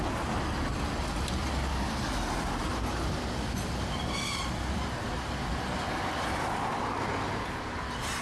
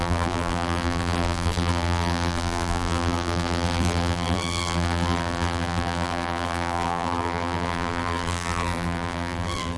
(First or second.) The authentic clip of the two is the first